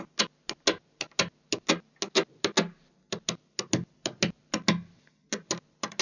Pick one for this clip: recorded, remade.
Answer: recorded